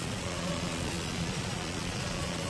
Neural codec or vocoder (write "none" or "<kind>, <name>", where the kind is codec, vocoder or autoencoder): vocoder, Vocos